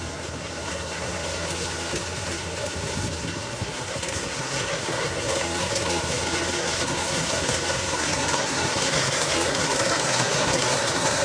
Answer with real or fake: fake